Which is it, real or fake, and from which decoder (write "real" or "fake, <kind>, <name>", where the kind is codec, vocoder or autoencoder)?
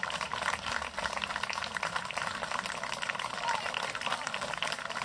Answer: real